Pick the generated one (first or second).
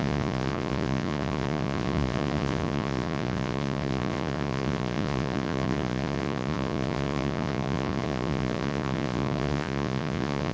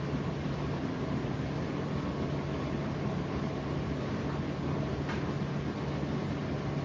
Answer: first